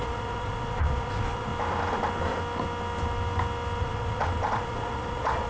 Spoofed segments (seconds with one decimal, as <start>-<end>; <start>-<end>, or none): 0.0-1.5; 3.8-5.5